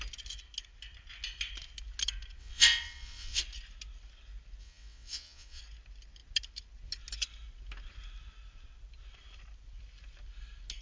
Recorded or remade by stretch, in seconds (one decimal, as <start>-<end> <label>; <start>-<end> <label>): 0.0-2.4 recorded; 2.4-3.4 remade; 3.4-4.6 recorded; 4.6-5.6 remade; 5.6-10.8 recorded